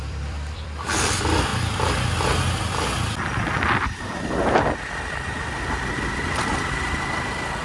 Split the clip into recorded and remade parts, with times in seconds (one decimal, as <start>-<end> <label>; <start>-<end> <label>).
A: 0.0-1.5 remade; 1.5-5.8 recorded; 5.8-7.6 remade